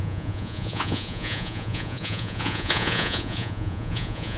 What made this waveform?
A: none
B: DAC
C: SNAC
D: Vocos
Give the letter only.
D